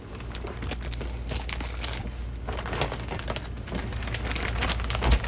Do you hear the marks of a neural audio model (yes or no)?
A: no